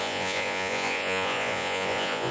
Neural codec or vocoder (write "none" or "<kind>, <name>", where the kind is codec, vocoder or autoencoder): vocoder, Vocos